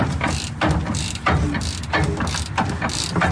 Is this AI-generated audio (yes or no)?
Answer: no